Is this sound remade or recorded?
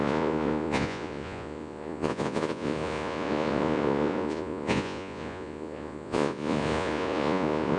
remade